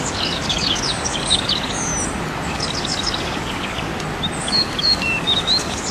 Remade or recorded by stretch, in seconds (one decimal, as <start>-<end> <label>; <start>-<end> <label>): 0.0-1.9 remade; 1.9-2.5 recorded; 2.5-3.9 remade; 3.9-4.4 recorded; 4.4-5.9 remade